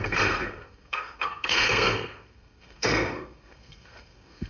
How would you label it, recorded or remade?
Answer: remade